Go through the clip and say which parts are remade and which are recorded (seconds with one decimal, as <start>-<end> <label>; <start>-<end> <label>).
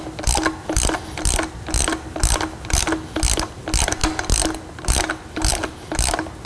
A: 0.0-6.5 recorded